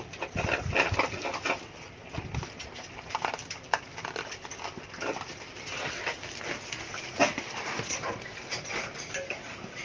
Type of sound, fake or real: real